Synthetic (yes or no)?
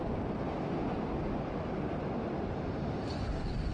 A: no